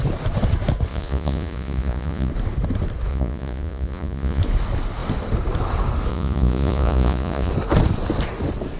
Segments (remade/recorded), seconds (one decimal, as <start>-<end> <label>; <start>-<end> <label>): 0.0-0.9 recorded; 0.9-2.3 remade; 2.3-3.1 recorded; 3.1-4.4 remade; 4.4-6.1 recorded; 6.1-7.5 remade; 7.5-8.8 recorded